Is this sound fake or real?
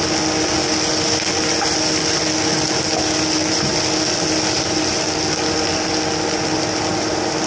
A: real